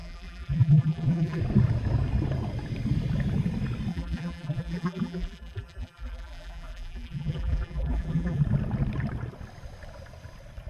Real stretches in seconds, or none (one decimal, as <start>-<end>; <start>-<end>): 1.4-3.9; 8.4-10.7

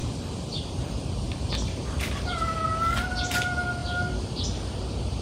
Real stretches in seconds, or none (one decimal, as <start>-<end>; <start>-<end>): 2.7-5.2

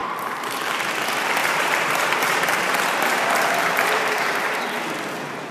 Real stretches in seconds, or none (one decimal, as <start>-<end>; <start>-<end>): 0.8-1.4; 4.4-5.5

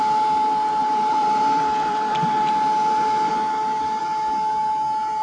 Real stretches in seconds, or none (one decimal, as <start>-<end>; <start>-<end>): 0.0-0.8; 2.5-5.2